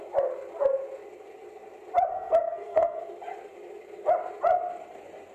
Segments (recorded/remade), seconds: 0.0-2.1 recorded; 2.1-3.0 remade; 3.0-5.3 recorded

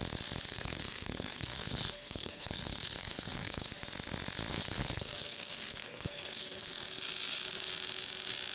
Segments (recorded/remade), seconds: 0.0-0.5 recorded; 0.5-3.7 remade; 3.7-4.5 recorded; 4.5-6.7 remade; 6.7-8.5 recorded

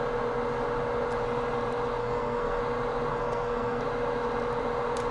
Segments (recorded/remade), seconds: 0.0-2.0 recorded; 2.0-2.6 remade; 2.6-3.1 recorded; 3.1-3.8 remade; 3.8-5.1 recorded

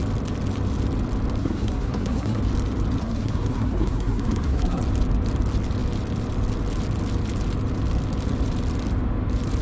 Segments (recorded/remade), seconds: 0.0-1.4 recorded; 1.4-2.4 remade; 2.4-3.0 recorded; 3.0-4.8 remade; 4.8-9.6 recorded